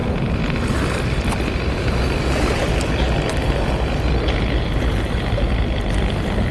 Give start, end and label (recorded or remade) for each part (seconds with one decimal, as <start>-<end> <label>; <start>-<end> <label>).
0.0-6.5 recorded